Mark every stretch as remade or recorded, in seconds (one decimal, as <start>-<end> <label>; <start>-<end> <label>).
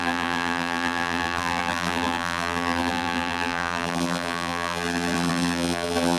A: 0.0-6.2 remade